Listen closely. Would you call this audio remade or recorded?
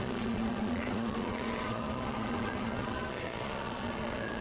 remade